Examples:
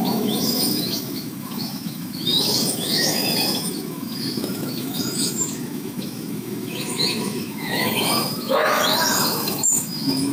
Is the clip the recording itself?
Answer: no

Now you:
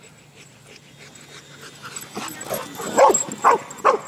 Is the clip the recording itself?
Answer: yes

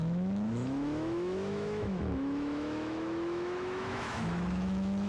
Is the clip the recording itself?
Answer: no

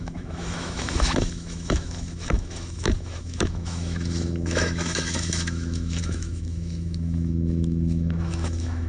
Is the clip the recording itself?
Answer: no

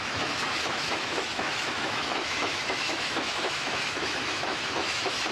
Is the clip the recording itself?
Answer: no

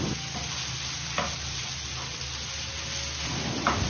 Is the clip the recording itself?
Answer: yes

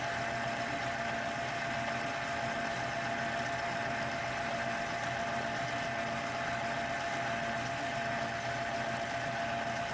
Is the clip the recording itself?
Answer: yes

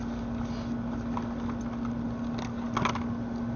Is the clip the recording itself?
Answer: yes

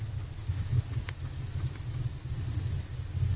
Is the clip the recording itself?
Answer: yes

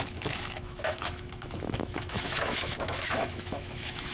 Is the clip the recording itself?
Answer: no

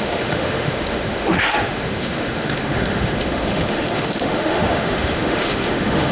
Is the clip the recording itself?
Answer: no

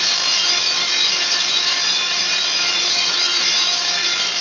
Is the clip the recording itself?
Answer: no